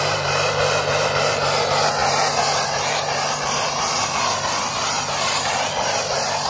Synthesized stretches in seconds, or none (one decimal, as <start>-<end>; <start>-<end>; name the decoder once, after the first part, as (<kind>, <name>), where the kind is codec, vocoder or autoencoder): none